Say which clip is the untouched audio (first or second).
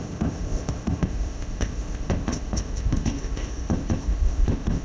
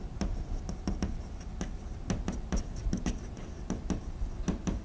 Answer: second